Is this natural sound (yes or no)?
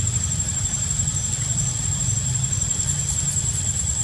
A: no